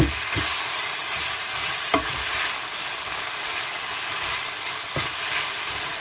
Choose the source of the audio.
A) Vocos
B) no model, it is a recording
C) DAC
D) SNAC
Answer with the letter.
B